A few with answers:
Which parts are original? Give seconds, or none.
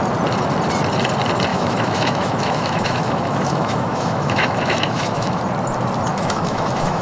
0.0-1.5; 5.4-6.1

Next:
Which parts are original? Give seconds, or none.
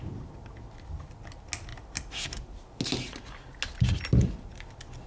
0.0-5.1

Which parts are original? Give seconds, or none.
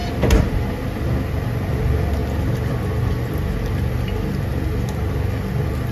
0.0-5.9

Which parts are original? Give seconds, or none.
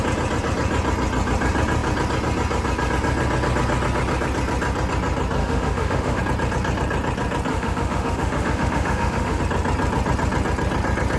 0.0-5.4; 6.2-7.5; 9.4-11.2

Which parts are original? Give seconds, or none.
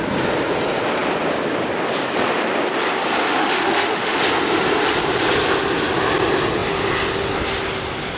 0.0-3.2; 4.2-8.2